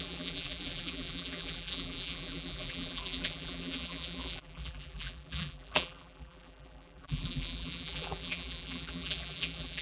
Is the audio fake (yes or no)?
yes